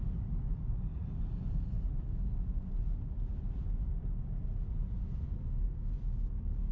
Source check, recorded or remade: recorded